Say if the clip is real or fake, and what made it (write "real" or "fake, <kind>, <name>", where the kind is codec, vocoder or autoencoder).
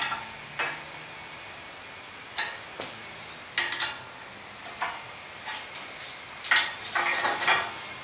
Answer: real